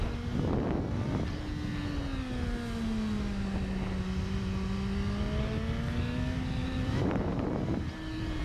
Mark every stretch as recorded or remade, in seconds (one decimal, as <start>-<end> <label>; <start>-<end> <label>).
0.0-6.6 recorded; 6.6-8.4 remade